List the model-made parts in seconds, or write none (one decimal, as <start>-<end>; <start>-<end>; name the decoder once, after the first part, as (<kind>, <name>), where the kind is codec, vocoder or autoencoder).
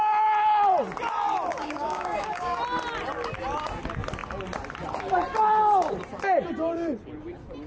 1.5-2.6 (codec, DAC)